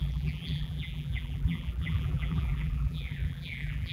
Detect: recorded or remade remade